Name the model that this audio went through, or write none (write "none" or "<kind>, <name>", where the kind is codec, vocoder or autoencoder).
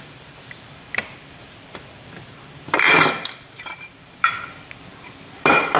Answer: vocoder, BigVGAN v2